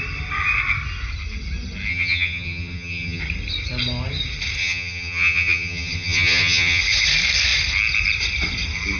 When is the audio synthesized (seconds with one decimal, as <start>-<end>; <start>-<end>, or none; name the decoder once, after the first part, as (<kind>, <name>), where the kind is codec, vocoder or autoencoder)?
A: 1.9-3.2 (vocoder, HiFi-GAN); 4.6-6.8